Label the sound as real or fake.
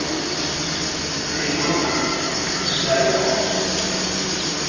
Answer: real